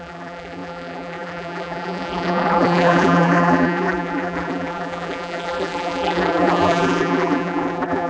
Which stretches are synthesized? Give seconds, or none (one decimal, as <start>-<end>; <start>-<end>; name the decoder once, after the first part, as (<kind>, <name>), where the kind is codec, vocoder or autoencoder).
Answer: 0.0-8.1 (vocoder, BigVGAN v2)